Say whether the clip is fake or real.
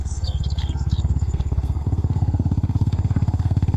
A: fake